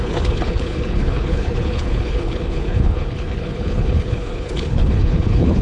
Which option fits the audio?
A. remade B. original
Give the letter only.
A